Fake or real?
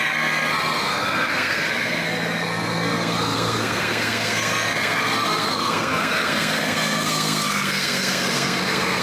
fake